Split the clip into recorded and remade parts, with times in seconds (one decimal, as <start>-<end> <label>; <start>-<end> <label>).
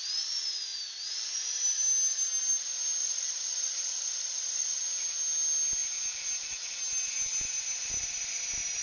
0.0-3.0 recorded; 3.0-4.8 remade; 4.8-8.8 recorded